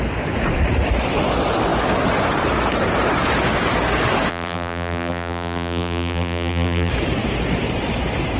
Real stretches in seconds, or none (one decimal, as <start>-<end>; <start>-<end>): 0.0-4.3; 6.9-8.4